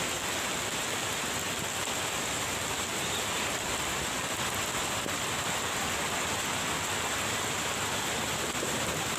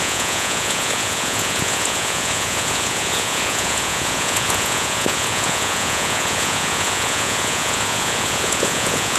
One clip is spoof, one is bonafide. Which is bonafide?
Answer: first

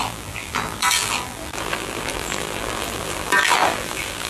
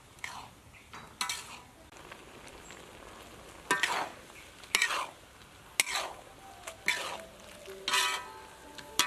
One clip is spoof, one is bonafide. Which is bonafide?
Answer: second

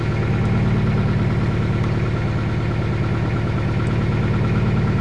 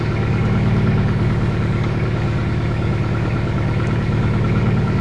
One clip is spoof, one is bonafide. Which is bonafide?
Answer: first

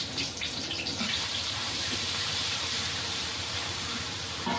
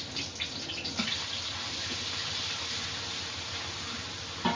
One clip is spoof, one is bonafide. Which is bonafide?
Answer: second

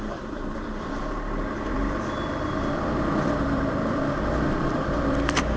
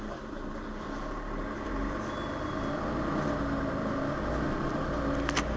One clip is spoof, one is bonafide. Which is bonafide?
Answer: second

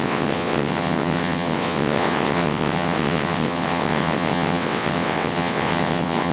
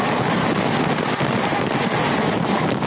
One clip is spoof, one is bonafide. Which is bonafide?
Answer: second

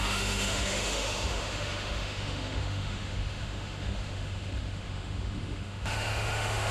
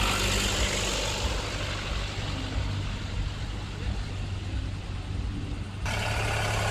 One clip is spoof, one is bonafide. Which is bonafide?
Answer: second